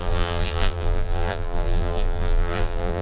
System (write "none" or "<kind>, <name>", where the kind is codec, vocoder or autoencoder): vocoder, BigVGAN v2